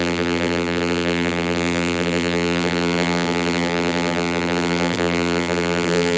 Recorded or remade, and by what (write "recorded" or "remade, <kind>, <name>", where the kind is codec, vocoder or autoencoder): remade, vocoder, BigVGAN v2